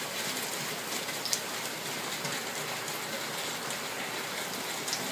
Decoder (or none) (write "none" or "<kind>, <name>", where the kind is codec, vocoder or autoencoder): none